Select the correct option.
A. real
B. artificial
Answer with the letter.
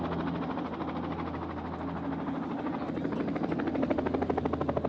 A